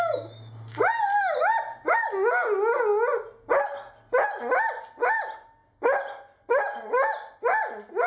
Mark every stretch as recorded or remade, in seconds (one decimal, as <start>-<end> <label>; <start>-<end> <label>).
0.0-8.1 recorded